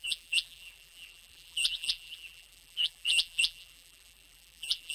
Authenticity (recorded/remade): remade